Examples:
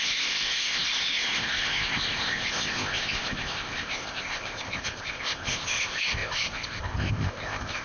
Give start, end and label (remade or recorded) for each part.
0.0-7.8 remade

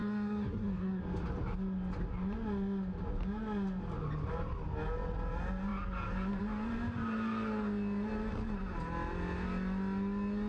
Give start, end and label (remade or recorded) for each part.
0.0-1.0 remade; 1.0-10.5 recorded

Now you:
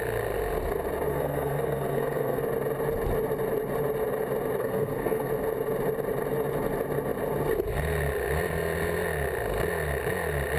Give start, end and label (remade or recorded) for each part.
0.0-1.1 recorded; 1.1-2.4 remade; 2.4-4.6 recorded; 4.6-5.3 remade; 5.3-10.6 recorded

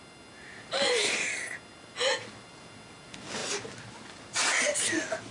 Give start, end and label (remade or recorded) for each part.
0.0-5.3 recorded

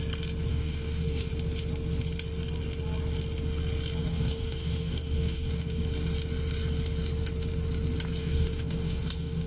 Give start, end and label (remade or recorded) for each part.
0.0-0.5 recorded; 0.5-1.3 remade; 1.3-4.0 recorded; 4.0-5.8 remade; 5.8-8.2 recorded; 8.2-9.5 remade

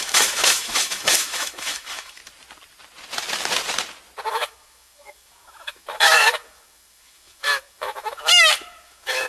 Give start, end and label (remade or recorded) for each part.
0.0-2.2 remade; 2.2-4.3 recorded; 4.3-9.3 remade

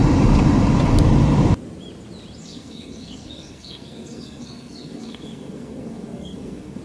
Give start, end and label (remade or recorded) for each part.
0.0-2.4 recorded; 2.4-6.8 remade

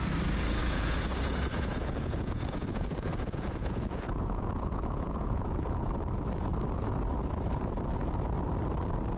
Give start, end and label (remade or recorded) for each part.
0.0-0.6 recorded; 0.6-5.9 remade; 5.9-9.2 recorded